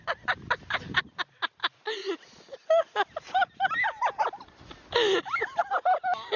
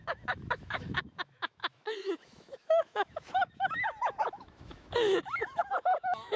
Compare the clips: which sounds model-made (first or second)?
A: second